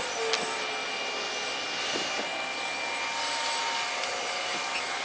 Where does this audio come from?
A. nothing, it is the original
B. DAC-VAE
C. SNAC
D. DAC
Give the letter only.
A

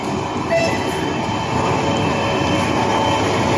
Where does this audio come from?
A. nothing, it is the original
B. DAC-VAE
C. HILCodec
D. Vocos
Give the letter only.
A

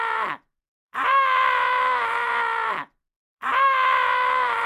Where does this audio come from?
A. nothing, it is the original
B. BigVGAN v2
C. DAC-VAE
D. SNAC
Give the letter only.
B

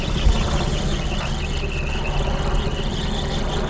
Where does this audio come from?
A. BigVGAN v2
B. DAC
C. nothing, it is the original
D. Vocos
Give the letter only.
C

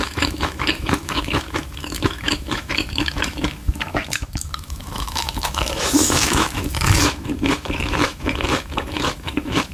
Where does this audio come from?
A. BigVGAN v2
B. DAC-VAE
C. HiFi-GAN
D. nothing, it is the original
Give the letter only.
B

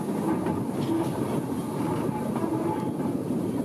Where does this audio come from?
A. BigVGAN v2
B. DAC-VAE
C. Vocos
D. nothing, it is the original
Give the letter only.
D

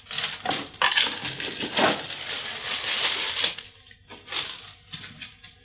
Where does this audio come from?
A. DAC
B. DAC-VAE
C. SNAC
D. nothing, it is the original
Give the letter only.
D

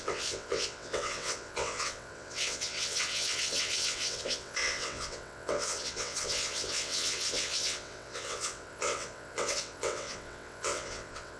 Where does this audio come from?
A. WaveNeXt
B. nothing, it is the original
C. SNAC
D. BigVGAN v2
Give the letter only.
A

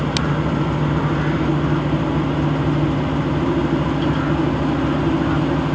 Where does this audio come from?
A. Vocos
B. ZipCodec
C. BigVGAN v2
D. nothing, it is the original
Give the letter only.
D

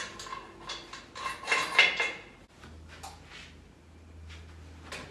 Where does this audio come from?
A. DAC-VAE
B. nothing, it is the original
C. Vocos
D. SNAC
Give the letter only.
B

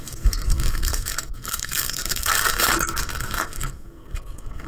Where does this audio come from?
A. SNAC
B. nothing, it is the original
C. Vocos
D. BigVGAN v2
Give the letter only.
A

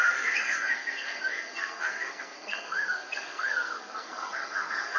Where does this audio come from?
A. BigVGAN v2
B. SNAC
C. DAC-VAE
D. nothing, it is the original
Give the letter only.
B